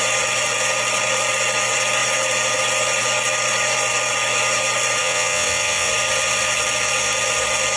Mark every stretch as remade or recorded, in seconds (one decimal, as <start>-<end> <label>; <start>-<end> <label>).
0.0-5.0 recorded; 5.0-5.9 remade; 5.9-7.8 recorded